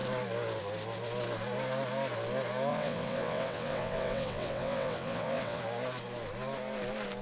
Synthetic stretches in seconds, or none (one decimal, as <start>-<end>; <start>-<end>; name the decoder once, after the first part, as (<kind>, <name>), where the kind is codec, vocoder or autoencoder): 2.7-5.6 (vocoder, WaveNeXt)